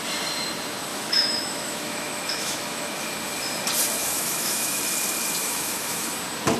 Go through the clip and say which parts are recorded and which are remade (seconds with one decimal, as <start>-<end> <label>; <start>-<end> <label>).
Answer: 0.0-0.9 recorded; 0.9-3.0 remade; 3.0-4.0 recorded; 4.0-4.8 remade; 4.8-5.4 recorded; 5.4-6.1 remade; 6.1-6.6 recorded